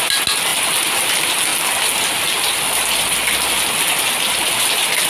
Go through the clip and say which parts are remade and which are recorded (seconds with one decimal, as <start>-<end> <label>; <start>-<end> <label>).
0.0-1.5 recorded; 1.5-4.6 remade; 4.6-5.1 recorded